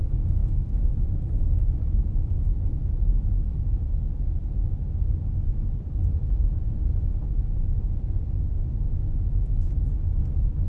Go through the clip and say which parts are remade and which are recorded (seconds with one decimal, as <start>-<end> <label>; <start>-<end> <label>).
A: 0.0-6.0 recorded; 6.0-6.9 remade; 6.9-10.7 recorded